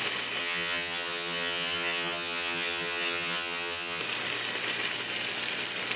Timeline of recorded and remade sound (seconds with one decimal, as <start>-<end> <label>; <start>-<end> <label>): 0.0-0.4 recorded; 0.4-4.0 remade; 4.0-6.0 recorded